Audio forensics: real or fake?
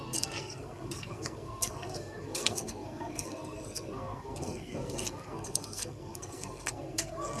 fake